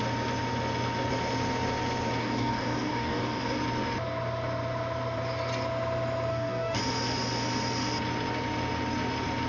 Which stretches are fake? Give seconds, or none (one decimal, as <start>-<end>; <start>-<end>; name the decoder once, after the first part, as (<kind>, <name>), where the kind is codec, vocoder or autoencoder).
2.2-3.6 (codec, DAC); 6.3-6.8